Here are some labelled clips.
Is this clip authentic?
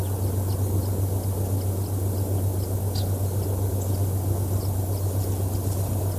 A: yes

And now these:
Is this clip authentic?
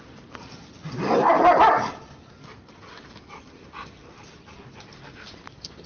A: yes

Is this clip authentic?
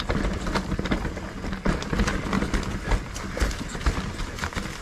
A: yes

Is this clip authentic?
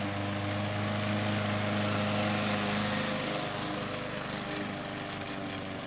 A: yes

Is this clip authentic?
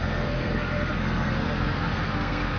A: no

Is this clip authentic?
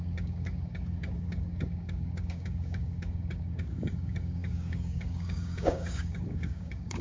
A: no